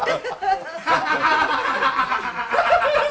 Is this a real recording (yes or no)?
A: yes